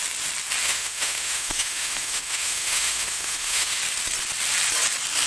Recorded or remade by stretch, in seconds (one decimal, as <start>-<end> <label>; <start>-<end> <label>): 0.0-0.6 recorded; 0.6-3.8 remade; 3.8-5.3 recorded